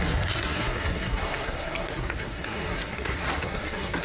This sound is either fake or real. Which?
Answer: fake